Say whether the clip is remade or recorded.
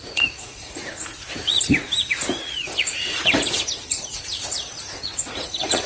remade